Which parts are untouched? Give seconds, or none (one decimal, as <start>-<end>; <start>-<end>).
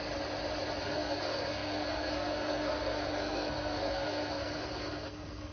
0.0-0.8